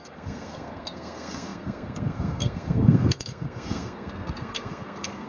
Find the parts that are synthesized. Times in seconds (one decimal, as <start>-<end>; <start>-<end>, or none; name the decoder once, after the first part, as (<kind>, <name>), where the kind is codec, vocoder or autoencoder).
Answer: 0.0-5.3 (codec, SNAC)